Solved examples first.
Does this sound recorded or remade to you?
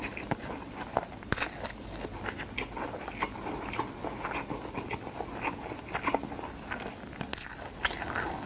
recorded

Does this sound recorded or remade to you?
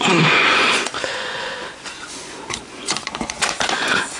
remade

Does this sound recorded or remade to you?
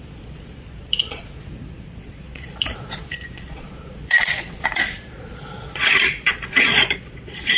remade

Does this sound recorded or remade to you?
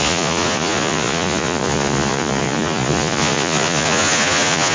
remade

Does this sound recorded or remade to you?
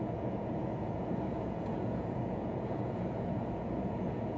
remade